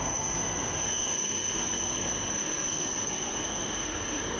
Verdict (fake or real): fake